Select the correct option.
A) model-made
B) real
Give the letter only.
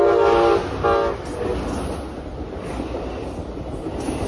B